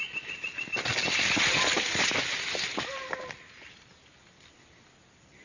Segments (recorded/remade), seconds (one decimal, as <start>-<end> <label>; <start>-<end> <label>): 0.0-5.4 recorded